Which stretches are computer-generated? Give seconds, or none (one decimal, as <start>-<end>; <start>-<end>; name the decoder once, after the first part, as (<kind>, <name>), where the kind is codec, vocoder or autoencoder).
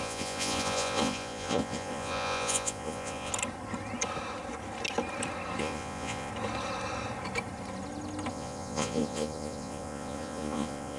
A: 0.0-3.3 (vocoder, Vocos); 5.6-6.3; 8.3-11.0